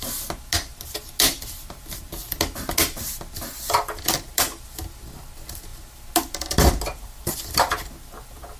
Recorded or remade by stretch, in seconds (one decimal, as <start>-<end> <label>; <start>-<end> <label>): 0.0-8.6 recorded